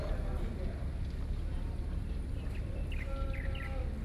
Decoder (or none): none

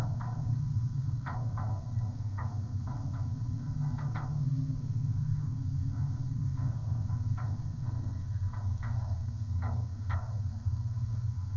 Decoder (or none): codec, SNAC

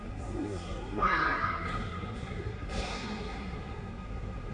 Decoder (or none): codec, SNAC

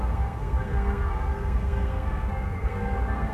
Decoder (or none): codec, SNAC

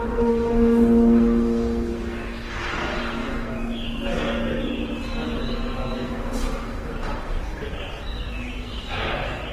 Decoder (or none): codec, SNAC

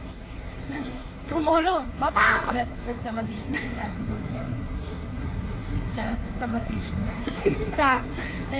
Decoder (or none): codec, SNAC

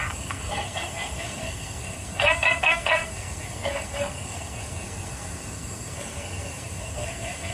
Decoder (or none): codec, SNAC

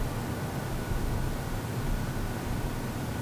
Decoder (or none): none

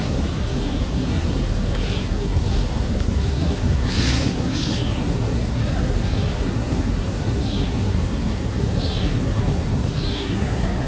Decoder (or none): codec, SNAC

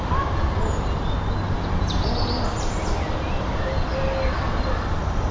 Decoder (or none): none